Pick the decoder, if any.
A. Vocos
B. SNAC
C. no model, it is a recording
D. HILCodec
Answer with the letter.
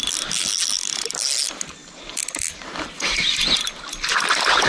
C